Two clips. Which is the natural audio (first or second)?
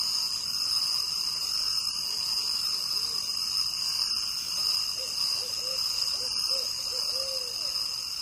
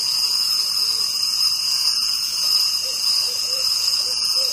first